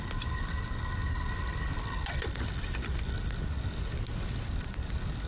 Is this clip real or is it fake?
real